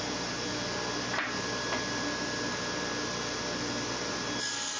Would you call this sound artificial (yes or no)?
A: no